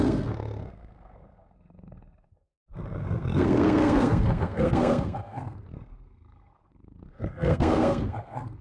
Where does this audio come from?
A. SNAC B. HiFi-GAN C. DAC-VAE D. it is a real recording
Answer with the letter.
A